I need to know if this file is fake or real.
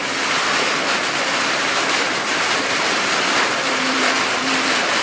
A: fake